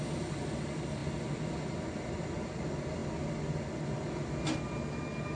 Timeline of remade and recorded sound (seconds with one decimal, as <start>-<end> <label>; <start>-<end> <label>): 0.0-5.4 recorded